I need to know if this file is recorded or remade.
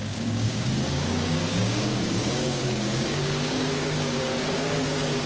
remade